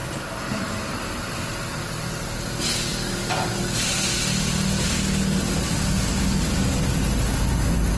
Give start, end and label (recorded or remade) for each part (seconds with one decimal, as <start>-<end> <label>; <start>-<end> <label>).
0.0-8.0 recorded